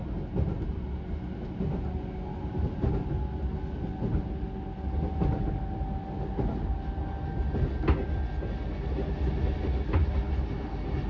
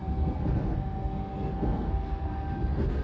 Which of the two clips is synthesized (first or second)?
second